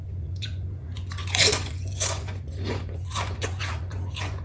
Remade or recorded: remade